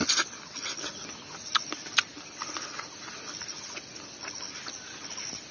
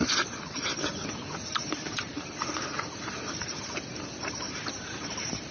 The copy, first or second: second